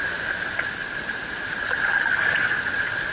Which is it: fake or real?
real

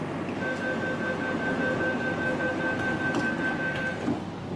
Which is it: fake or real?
real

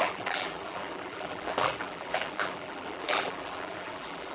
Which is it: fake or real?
fake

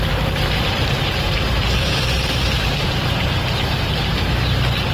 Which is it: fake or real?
fake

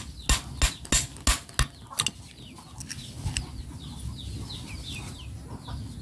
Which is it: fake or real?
real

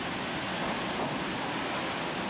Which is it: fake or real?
real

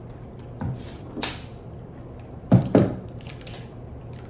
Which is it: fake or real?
fake